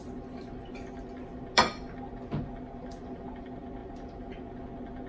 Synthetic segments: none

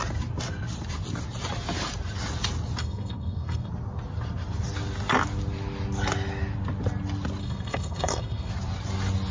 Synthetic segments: 2.8-3.7 (codec, SNAC); 7.4-8.5

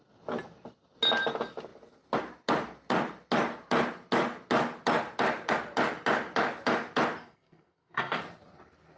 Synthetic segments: 7.2-8.2 (codec, SNAC)

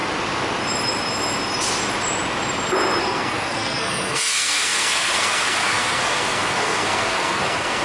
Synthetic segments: 3.0-7.8 (codec, SNAC)

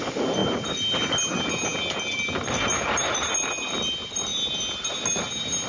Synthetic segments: none

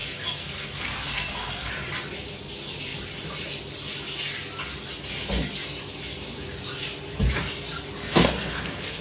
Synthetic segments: 0.0-1.7 (codec, SNAC); 8.0-9.0

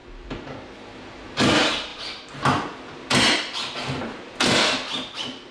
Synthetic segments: none